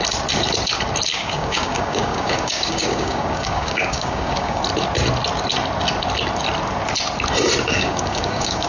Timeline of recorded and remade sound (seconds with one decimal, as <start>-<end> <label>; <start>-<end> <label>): 0.0-1.1 recorded; 1.1-4.6 remade; 4.6-7.7 recorded; 7.7-8.7 remade